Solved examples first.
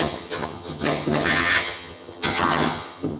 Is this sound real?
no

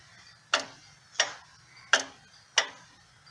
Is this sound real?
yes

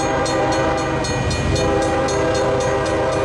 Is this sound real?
yes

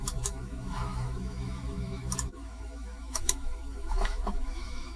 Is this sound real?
no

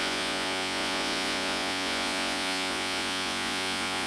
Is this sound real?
no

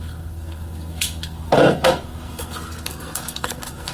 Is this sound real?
no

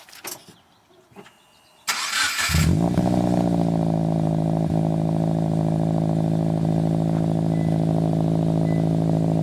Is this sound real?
yes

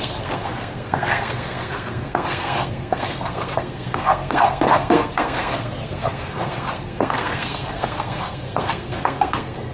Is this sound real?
no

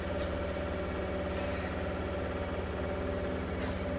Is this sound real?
yes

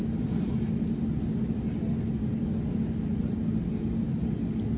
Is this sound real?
yes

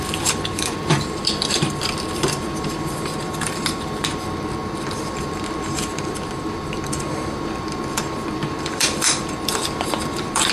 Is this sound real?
no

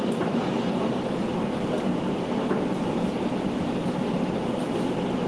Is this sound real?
yes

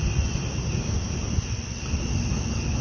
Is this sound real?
yes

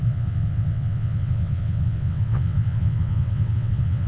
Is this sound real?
no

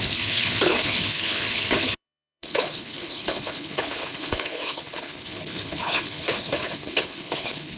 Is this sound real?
no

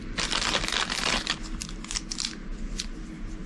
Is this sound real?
yes